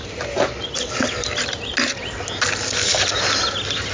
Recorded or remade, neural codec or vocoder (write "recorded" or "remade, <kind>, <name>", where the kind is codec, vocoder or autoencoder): recorded